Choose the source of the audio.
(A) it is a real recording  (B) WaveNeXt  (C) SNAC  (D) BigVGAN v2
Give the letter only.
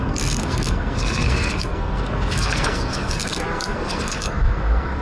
C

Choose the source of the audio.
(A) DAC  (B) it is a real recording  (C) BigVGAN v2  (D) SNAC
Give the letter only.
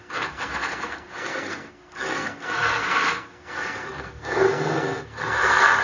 D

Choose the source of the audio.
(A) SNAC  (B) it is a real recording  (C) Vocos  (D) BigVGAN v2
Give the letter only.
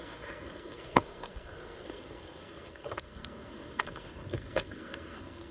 A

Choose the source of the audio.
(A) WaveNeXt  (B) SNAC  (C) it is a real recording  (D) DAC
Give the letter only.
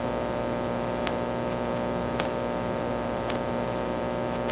C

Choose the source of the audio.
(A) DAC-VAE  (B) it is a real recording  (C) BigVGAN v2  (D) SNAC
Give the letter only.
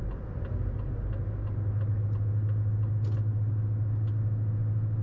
B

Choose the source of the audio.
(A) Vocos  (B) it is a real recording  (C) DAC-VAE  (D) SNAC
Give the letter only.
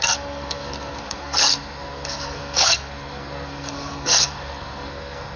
D